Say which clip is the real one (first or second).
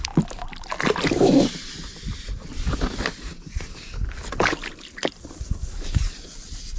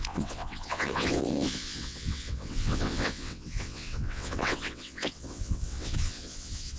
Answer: first